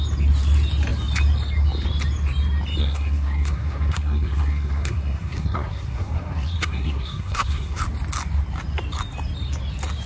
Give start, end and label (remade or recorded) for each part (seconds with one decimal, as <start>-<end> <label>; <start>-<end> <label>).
0.0-2.8 recorded; 2.8-7.8 remade; 7.8-10.1 recorded